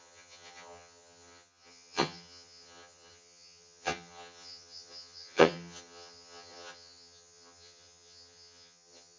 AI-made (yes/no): yes